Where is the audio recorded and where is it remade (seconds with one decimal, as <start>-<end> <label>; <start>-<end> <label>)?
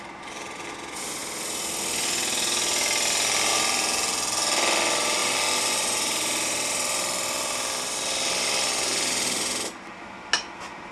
0.0-10.9 recorded